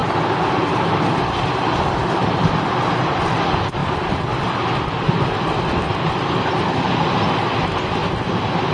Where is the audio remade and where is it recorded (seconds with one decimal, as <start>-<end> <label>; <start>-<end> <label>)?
0.0-3.8 recorded; 3.8-4.3 remade; 4.3-8.0 recorded; 8.0-8.7 remade